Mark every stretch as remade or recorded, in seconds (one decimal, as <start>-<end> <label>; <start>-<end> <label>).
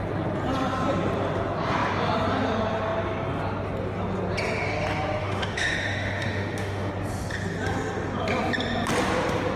0.0-5.2 recorded; 5.2-6.9 remade; 6.9-9.6 recorded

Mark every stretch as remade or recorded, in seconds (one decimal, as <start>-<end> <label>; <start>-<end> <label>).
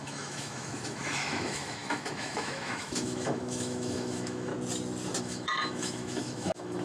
0.0-4.5 remade; 4.5-5.2 recorded; 5.2-6.8 remade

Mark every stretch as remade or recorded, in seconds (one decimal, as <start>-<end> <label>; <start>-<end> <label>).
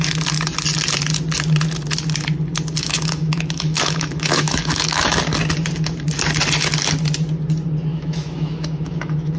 0.0-2.8 recorded; 2.8-5.2 remade; 5.2-7.9 recorded; 7.9-9.4 remade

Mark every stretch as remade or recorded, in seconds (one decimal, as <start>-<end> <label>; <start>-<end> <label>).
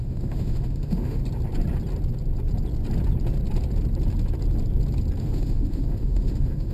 0.0-1.2 remade; 1.2-5.2 recorded; 5.2-6.7 remade